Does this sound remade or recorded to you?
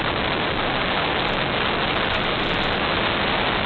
recorded